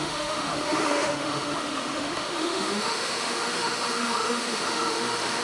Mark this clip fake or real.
fake